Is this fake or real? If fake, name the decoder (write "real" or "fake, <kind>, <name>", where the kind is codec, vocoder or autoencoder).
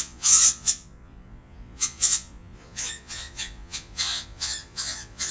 fake, vocoder, Vocos